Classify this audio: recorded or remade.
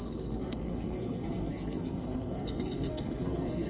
remade